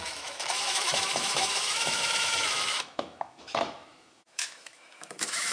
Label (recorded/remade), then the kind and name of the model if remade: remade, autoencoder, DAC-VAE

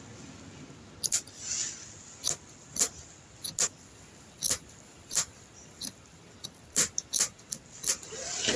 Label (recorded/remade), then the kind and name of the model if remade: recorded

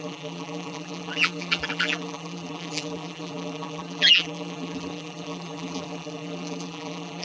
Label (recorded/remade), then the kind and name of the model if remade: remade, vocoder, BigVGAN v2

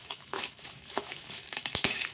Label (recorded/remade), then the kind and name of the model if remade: remade, autoencoder, DAC-VAE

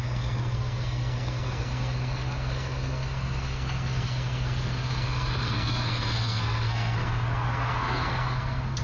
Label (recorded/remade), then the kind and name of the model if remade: remade, codec, SNAC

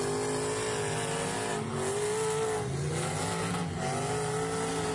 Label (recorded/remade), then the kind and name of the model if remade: recorded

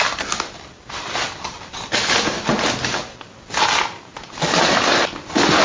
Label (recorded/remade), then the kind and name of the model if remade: recorded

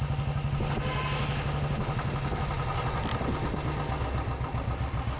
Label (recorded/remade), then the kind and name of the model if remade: recorded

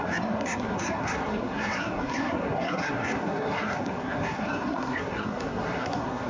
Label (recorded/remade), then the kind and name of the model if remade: remade, codec, SNAC